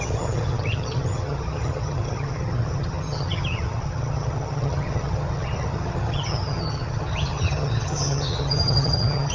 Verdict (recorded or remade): remade